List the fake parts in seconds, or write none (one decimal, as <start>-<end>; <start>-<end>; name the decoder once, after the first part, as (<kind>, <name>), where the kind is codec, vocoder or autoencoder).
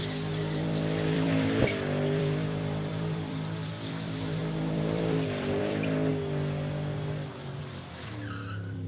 0.0-6.1 (vocoder, BigVGAN v2); 7.6-8.9